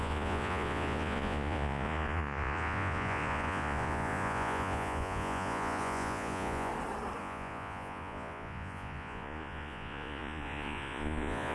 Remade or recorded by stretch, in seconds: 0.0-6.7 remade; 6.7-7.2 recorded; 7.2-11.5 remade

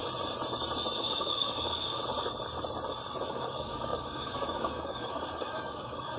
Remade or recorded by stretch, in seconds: 0.0-1.0 recorded; 1.0-2.0 remade; 2.0-3.3 recorded; 3.3-6.2 remade